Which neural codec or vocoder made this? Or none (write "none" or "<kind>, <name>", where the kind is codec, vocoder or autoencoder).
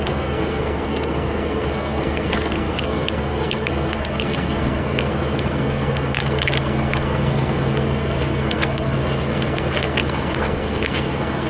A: codec, SNAC